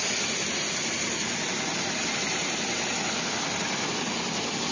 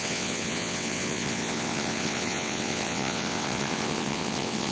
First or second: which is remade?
second